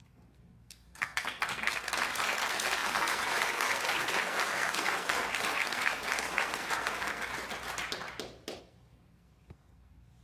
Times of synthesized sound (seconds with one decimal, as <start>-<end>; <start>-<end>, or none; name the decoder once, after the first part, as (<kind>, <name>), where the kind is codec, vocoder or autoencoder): 0.0-7.3 (codec, SNAC); 8.6-10.2